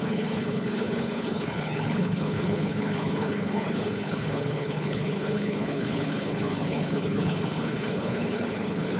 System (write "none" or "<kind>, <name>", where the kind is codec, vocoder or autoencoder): codec, HILCodec